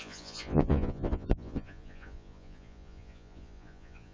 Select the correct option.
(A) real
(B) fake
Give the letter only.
B